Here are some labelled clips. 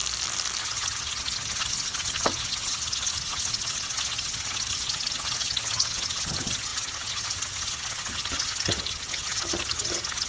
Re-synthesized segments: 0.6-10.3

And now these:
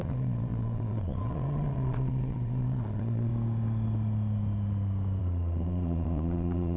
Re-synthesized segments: 0.0-3.3; 5.2-6.8

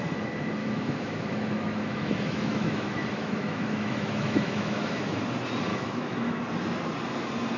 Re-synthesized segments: 0.6-5.2; 5.7-6.4

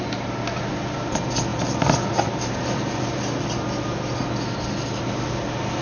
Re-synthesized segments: 1.5-5.0

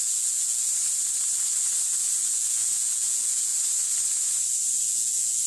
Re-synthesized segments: 0.0-0.7; 2.0-3.5; 4.8-5.5